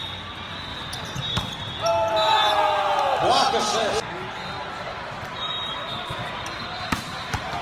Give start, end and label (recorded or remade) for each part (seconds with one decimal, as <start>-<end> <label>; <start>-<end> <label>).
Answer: 0.0-0.7 recorded; 0.7-1.4 remade; 1.4-4.9 recorded; 4.9-7.6 remade

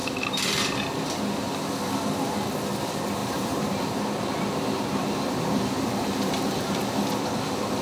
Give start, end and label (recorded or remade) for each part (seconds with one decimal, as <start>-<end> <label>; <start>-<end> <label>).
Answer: 0.0-0.6 remade; 0.6-3.2 recorded; 3.2-6.8 remade; 6.8-7.8 recorded

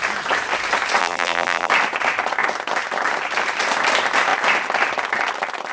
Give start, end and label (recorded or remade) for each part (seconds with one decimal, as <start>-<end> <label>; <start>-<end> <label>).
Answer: 0.0-1.0 recorded; 1.0-1.7 remade; 1.7-5.7 recorded

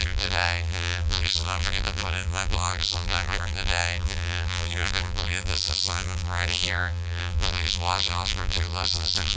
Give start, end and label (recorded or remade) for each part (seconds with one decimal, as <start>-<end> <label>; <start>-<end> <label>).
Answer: 0.0-9.4 remade

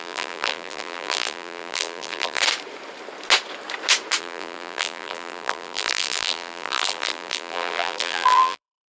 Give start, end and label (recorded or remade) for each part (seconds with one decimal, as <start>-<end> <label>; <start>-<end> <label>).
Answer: 0.0-2.4 remade; 2.4-4.2 recorded; 4.2-8.9 remade